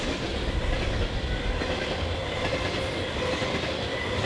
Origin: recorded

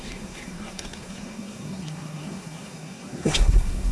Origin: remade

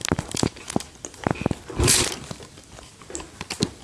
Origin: recorded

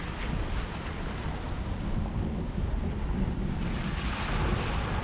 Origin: remade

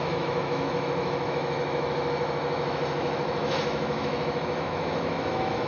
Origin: remade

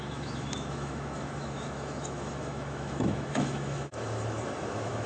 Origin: remade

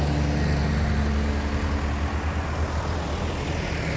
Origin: recorded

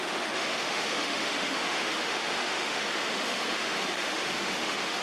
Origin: remade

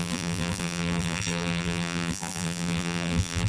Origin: remade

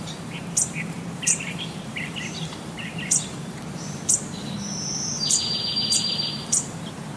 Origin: remade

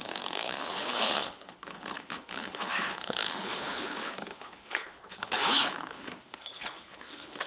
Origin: remade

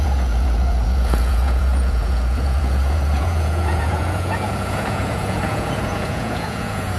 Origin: remade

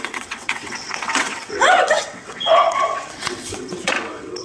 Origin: remade